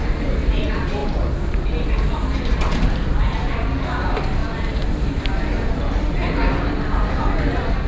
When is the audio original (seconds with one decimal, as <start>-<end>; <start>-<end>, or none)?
0.0-7.9